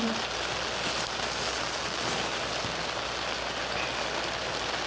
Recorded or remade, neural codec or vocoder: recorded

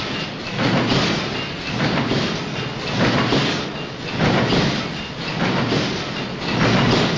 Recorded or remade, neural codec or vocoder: recorded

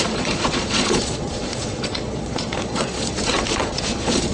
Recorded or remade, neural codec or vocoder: remade, vocoder, Vocos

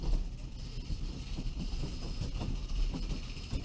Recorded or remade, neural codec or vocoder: recorded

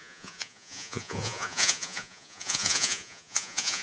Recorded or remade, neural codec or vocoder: remade, vocoder, Vocos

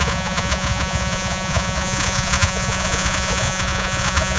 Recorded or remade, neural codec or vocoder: remade, vocoder, Vocos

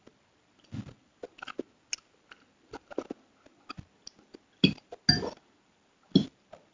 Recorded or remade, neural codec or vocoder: recorded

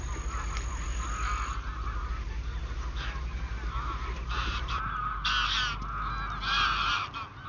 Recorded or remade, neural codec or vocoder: recorded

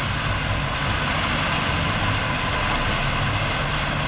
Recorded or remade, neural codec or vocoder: recorded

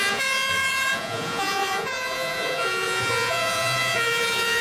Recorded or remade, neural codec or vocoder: remade, vocoder, Vocos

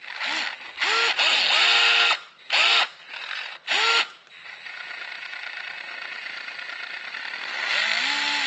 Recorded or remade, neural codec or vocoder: recorded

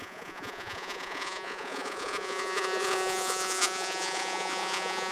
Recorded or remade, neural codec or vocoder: remade, vocoder, Vocos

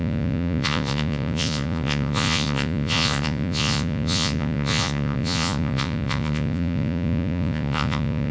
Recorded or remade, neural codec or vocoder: remade, vocoder, Vocos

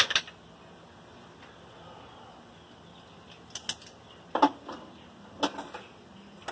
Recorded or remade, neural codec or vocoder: recorded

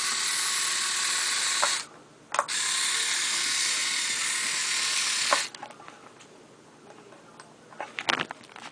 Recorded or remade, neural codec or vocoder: recorded